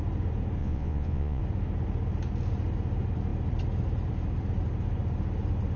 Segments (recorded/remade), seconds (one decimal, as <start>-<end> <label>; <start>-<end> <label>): 0.0-0.6 recorded; 0.6-1.4 remade; 1.4-5.8 recorded